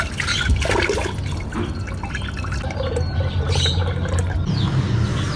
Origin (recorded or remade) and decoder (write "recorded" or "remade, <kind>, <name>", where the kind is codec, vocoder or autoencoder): recorded